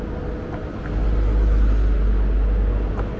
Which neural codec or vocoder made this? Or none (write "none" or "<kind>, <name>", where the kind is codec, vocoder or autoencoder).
none